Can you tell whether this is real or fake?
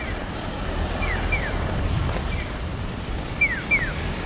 real